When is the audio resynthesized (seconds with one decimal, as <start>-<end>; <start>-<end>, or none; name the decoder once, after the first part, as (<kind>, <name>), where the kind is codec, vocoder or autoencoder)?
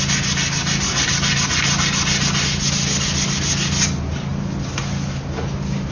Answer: none